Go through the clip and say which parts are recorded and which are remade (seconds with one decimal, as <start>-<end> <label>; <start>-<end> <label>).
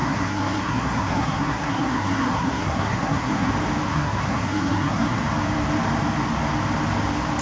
0.0-3.5 remade; 3.5-3.9 recorded; 3.9-5.2 remade; 5.2-7.4 recorded